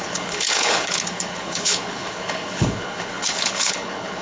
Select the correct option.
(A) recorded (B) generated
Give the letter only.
B